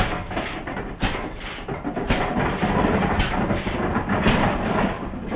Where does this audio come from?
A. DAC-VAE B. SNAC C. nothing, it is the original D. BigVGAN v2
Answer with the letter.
D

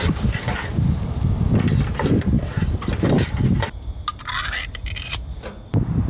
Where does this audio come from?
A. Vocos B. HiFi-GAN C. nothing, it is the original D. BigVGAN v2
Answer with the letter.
C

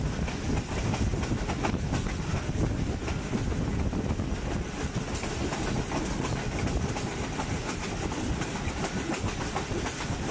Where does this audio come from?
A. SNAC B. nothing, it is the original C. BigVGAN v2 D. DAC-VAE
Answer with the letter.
B